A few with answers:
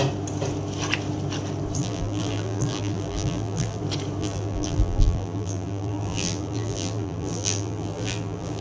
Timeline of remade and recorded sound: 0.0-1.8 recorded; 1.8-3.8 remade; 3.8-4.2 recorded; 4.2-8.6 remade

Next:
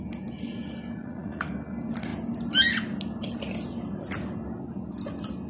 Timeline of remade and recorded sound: 0.0-1.0 recorded; 1.0-1.5 remade; 1.5-5.5 recorded

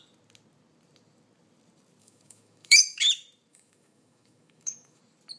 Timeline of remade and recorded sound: 0.0-2.0 recorded; 2.0-3.0 remade; 3.0-3.5 recorded; 3.5-5.0 remade; 5.0-5.4 recorded

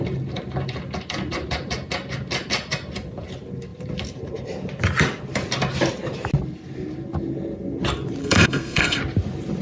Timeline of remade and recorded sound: 0.0-8.2 recorded; 8.2-9.0 remade; 9.0-9.6 recorded

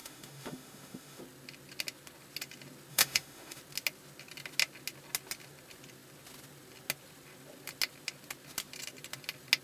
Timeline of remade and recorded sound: 0.0-1.2 remade; 1.2-2.9 recorded; 2.9-3.6 remade; 3.6-9.6 recorded

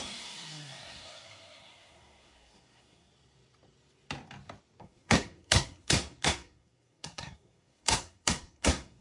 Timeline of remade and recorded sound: 0.0-3.1 remade; 3.1-4.8 recorded; 4.8-9.0 remade

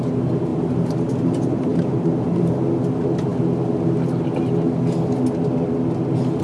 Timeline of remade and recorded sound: 0.0-0.5 recorded; 0.5-1.1 remade; 1.1-1.7 recorded; 1.7-2.4 remade; 2.4-6.4 recorded